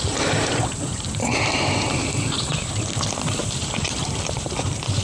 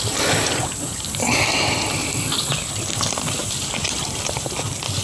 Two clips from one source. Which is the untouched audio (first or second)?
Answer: second